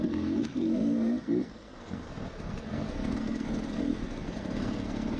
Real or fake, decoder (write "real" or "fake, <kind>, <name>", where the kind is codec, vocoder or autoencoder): fake, codec, SNAC